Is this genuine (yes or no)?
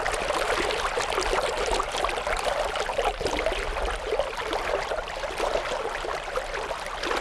yes